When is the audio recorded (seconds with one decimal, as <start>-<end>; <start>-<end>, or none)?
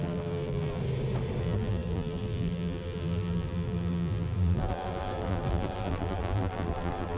0.8-1.4